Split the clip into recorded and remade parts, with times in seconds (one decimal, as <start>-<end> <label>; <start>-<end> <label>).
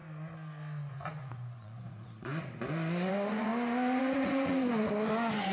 0.0-0.9 recorded; 0.9-2.3 remade; 2.3-3.1 recorded; 3.1-3.5 remade; 3.5-4.0 recorded; 4.0-5.5 remade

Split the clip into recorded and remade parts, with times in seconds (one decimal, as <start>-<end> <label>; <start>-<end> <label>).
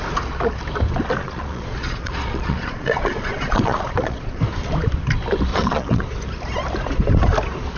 0.0-1.2 recorded; 1.2-4.4 remade; 4.4-5.5 recorded; 5.5-6.2 remade; 6.2-7.8 recorded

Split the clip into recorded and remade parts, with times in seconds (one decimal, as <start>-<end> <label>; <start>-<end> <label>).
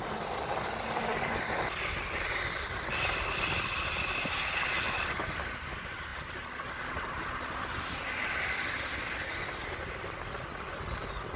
0.0-11.4 recorded